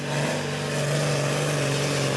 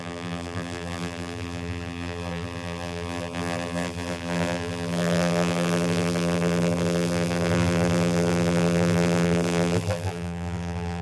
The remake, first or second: second